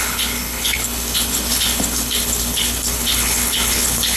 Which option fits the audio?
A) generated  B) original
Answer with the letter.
A